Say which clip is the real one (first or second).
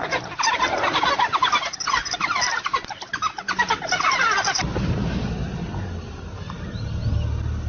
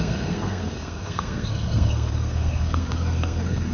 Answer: first